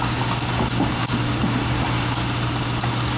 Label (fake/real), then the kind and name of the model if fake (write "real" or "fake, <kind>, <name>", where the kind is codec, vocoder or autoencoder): real